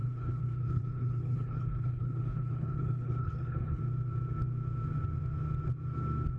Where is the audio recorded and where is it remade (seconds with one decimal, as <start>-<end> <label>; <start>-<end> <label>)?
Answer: 0.0-3.8 remade; 3.8-6.4 recorded